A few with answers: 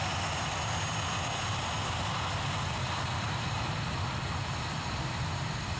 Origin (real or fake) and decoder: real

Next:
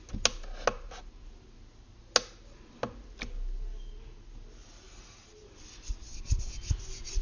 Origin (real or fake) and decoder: real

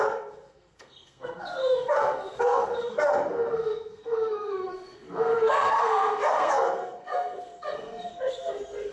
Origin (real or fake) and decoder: fake, codec, SNAC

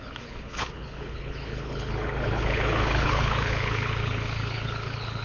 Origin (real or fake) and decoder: fake, codec, HILCodec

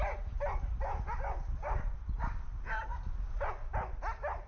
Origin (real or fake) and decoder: real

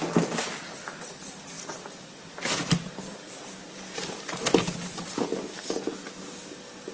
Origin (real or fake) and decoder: real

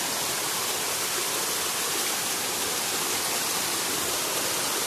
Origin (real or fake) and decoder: real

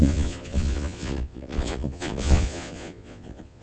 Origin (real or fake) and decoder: fake, vocoder, Vocos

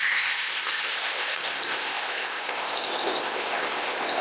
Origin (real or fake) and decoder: fake, codec, ZipCodec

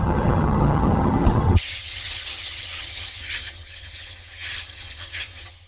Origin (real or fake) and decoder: fake, vocoder, HiFi-GAN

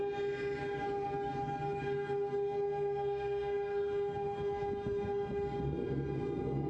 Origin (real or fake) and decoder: real